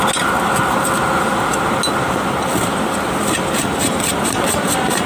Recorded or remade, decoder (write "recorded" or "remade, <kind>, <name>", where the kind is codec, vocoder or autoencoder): recorded